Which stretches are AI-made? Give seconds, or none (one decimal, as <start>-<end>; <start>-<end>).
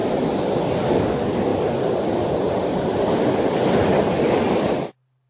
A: none